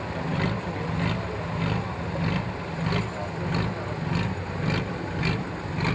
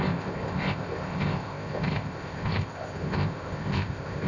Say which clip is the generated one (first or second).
second